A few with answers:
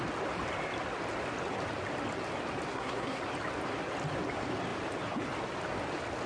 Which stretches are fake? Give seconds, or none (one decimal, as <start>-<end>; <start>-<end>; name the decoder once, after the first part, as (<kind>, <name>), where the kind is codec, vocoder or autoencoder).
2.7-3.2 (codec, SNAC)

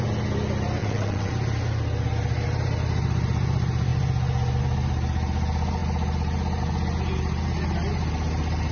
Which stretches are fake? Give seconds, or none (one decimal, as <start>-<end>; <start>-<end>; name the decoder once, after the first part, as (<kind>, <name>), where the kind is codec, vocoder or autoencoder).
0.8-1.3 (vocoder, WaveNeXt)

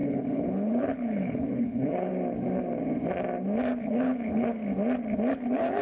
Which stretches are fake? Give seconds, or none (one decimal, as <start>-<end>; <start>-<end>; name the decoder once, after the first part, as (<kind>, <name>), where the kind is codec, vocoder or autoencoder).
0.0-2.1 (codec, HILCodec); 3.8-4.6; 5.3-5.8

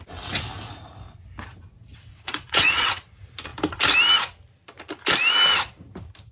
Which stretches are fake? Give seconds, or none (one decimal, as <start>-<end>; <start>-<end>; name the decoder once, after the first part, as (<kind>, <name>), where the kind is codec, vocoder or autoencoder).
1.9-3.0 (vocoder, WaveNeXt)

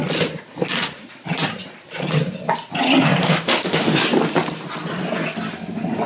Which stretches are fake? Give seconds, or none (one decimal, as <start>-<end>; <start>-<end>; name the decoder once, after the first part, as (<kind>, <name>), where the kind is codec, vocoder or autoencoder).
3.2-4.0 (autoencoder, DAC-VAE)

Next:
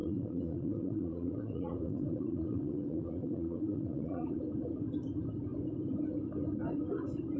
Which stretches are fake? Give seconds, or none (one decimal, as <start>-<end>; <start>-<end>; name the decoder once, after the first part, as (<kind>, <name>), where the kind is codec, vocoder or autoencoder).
0.0-4.4 (vocoder, Vocos)

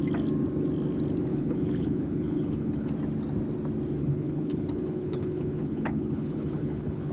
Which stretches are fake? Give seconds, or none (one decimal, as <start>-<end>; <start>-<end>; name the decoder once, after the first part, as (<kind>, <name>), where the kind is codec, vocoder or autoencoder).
1.3-2.9 (codec, HILCodec); 4.0-7.1

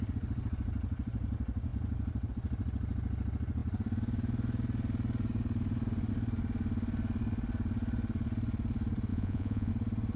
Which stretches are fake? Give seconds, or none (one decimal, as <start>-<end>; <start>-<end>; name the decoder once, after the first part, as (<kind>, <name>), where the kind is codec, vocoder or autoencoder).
9.1-9.7 (vocoder, Vocos)